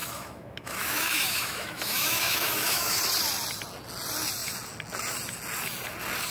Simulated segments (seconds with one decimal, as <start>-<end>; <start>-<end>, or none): 0.0-3.0